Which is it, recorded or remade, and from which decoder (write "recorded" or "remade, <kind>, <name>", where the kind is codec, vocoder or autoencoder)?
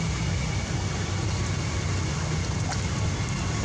remade, vocoder, BigVGAN v2